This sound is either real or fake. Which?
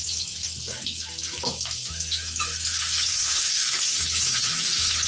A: fake